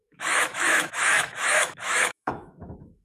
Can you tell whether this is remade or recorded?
remade